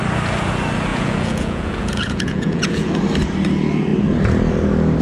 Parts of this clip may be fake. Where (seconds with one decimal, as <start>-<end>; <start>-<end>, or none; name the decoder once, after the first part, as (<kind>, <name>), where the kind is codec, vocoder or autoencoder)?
0.9-2.9 (vocoder, Vocos)